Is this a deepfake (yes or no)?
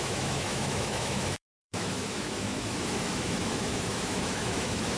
yes